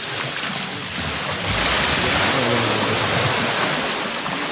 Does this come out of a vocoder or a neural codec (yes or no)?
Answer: no